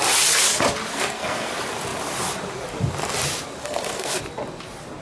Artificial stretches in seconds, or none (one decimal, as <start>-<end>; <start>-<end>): 0.9-1.5; 3.6-4.2